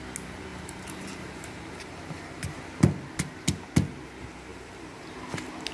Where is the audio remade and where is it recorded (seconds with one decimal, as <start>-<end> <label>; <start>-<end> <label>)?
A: 0.0-0.5 recorded; 0.5-2.6 remade; 2.6-4.5 recorded; 4.5-5.2 remade; 5.2-5.7 recorded

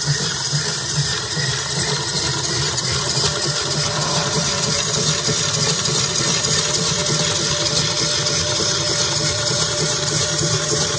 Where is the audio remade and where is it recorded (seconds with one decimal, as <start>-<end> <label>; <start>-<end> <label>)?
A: 0.0-4.5 remade; 4.5-6.4 recorded; 6.4-7.0 remade; 7.0-8.3 recorded; 8.3-11.0 remade

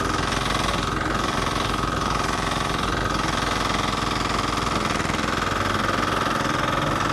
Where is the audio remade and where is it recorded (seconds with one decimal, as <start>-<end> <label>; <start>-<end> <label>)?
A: 0.0-0.7 recorded; 0.7-3.0 remade; 3.0-7.1 recorded

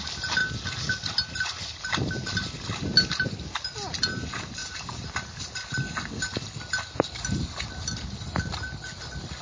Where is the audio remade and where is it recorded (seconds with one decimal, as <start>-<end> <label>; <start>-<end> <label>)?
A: 0.0-4.6 recorded; 4.6-5.1 remade; 5.1-9.4 recorded

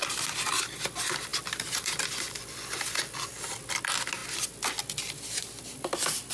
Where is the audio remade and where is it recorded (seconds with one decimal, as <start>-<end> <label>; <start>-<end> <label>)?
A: 0.0-1.3 recorded; 1.3-3.5 remade; 3.5-6.3 recorded

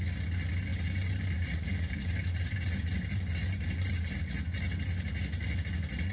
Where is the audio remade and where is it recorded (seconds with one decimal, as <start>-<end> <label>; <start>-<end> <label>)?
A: 0.0-0.7 recorded; 0.7-4.2 remade; 4.2-6.1 recorded

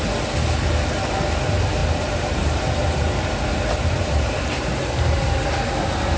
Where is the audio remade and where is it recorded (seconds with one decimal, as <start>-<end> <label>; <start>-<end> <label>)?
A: 0.0-1.8 recorded; 1.8-5.2 remade; 5.2-6.2 recorded